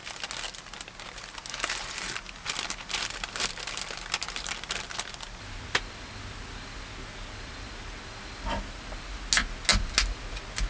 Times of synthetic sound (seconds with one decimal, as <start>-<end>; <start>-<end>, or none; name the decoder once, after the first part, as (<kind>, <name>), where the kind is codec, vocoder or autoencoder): none